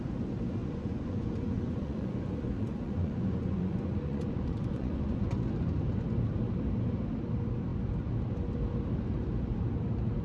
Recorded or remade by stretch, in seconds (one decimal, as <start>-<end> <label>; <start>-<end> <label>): 0.0-0.6 recorded; 0.6-5.4 remade; 5.4-10.2 recorded

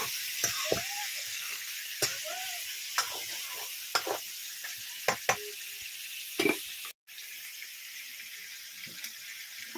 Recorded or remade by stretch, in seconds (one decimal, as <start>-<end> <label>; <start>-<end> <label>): 0.0-1.0 recorded; 1.0-1.7 remade; 1.7-9.8 recorded

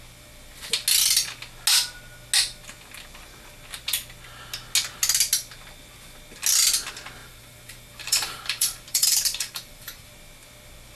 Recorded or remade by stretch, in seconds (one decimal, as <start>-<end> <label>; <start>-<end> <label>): 0.0-7.2 recorded; 7.2-10.1 remade; 10.1-11.0 recorded